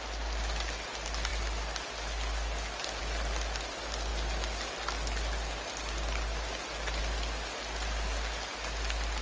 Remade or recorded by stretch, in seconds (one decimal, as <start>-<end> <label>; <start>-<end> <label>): 0.0-9.2 recorded